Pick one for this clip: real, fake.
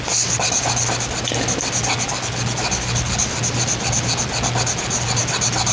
real